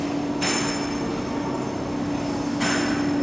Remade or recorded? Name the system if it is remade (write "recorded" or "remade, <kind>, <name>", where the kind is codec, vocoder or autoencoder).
recorded